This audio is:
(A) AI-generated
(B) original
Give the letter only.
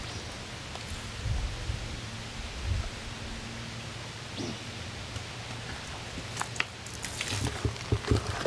B